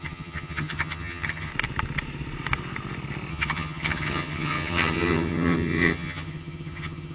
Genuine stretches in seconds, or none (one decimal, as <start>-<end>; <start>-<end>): 1.5-3.3